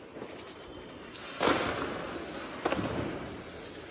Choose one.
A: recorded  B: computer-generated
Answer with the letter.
A